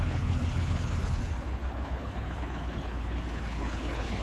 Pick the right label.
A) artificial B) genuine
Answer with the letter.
A